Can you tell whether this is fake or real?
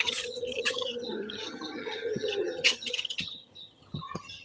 fake